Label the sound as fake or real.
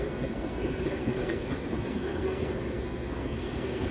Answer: fake